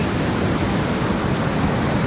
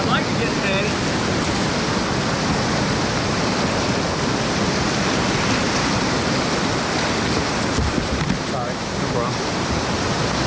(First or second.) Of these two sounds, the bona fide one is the second